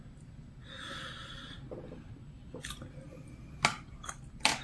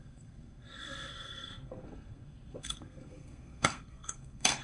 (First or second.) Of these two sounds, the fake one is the second